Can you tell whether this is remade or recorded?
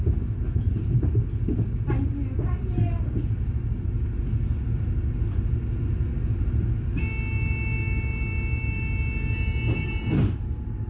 recorded